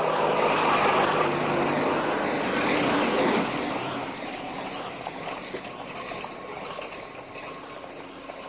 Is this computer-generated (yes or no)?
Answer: no